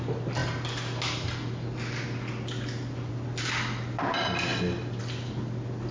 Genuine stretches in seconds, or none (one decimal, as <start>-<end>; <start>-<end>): 0.0-4.5; 5.0-5.9